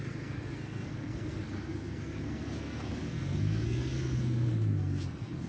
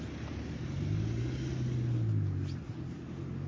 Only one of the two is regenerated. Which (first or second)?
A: first